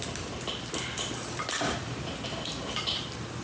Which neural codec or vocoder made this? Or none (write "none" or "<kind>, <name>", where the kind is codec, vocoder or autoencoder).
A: none